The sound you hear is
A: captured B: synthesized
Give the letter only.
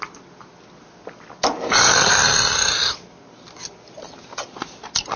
A